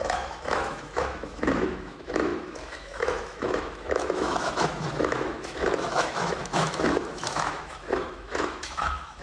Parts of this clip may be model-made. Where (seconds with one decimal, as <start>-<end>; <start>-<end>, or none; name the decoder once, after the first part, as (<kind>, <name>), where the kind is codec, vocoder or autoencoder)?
0.0-9.2 (autoencoder, DAC-VAE)